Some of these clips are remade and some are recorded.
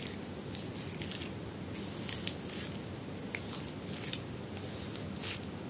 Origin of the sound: recorded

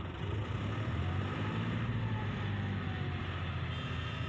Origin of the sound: recorded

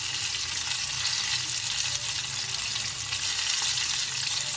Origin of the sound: recorded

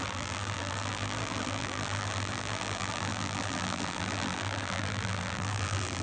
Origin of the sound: remade